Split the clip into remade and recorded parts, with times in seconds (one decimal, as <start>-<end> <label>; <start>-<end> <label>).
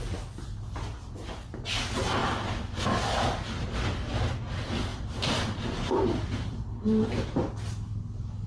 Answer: 0.0-4.9 recorded; 4.9-7.1 remade; 7.1-8.5 recorded